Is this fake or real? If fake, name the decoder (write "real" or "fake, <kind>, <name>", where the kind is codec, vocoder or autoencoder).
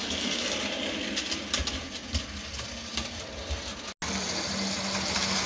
real